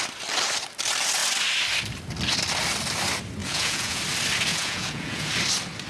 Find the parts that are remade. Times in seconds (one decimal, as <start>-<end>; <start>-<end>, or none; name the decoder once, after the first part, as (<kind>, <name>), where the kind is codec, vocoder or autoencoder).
3.4-4.0 (vocoder, Vocos); 4.5-5.3